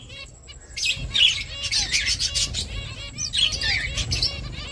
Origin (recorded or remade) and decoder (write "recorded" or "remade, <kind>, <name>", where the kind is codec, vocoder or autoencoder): recorded